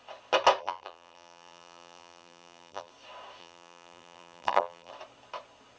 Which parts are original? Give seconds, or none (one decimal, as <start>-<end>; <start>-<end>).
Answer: 0.0-0.6; 2.9-3.4; 4.9-5.8